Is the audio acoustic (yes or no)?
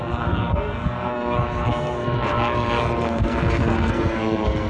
no